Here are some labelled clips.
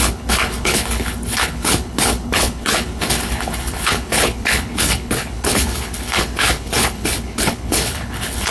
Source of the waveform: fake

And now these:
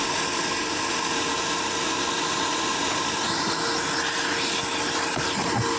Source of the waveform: real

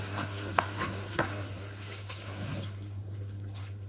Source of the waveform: fake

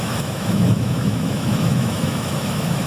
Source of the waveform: fake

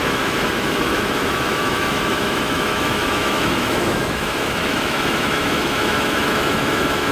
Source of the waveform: fake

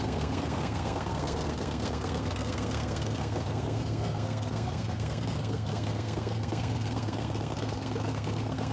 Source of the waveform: fake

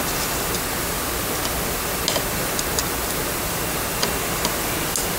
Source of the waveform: real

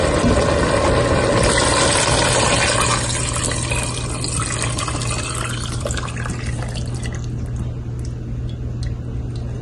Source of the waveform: real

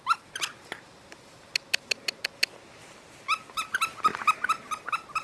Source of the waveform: real